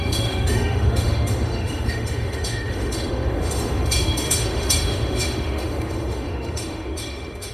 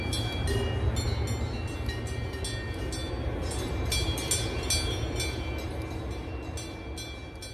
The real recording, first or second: second